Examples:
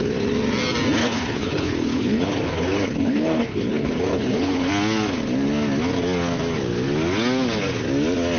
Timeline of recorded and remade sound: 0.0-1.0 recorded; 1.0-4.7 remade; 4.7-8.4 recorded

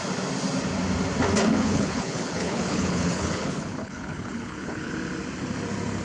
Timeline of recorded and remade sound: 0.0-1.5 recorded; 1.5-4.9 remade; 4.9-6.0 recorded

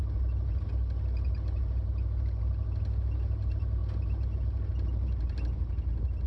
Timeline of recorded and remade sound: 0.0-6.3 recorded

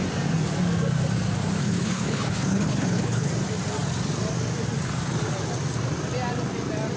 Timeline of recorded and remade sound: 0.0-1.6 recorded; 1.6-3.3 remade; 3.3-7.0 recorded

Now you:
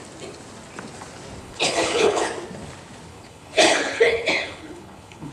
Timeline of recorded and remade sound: 0.0-1.4 recorded; 1.4-2.3 remade; 2.3-3.1 recorded; 3.1-5.3 remade

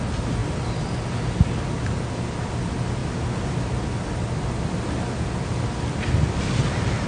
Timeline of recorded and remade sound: 0.0-7.1 recorded

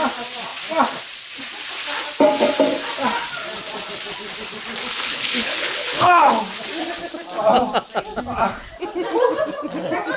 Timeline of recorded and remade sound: 0.0-4.8 recorded; 4.8-6.4 remade; 6.4-10.2 recorded

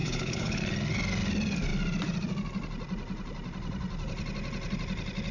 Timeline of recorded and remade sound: 0.0-0.6 remade; 0.6-5.3 recorded